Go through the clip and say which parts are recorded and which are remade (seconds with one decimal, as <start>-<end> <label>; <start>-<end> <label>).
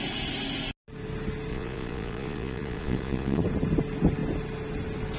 0.0-1.5 recorded; 1.5-3.4 remade; 3.4-5.2 recorded